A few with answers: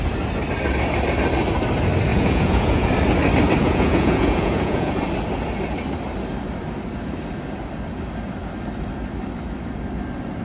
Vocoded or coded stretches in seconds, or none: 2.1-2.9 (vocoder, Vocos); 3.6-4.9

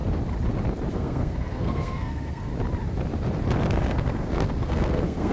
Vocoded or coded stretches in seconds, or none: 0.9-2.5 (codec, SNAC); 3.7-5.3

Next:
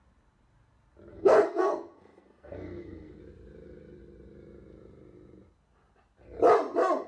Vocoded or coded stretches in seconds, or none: 1.1-3.2 (codec, SNAC)